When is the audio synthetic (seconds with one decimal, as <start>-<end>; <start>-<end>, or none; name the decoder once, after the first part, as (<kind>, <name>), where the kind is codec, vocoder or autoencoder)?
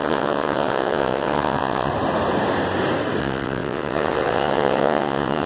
0.0-1.9 (vocoder, WaveNeXt); 3.2-5.5